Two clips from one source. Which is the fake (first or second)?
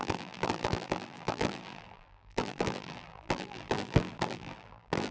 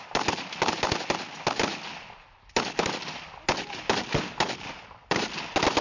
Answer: first